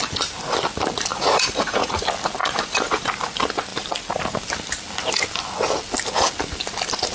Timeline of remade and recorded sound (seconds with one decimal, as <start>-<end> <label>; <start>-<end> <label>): 0.0-1.1 recorded; 1.1-2.0 remade; 2.0-2.4 recorded; 2.4-3.0 remade; 3.0-7.1 recorded